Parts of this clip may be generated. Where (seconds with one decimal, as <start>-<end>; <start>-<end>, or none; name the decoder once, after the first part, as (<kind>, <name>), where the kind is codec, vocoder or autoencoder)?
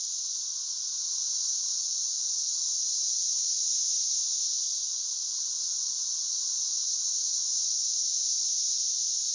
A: none